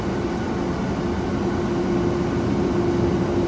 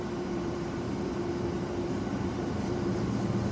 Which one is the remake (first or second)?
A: second